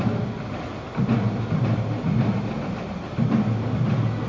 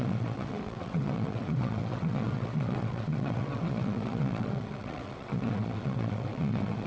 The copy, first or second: second